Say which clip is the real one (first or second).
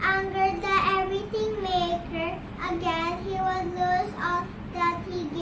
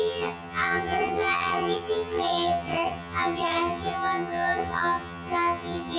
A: first